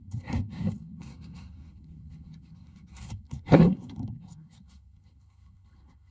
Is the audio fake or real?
fake